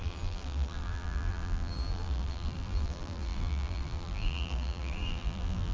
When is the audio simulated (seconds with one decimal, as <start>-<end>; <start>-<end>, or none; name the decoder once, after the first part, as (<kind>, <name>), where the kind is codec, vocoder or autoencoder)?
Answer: 0.0-5.7 (vocoder, BigVGAN v2)